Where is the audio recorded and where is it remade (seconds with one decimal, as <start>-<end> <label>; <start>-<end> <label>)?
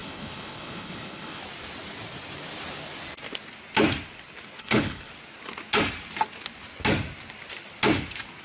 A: 0.0-1.4 remade; 1.4-4.6 recorded; 4.6-5.1 remade; 5.1-8.4 recorded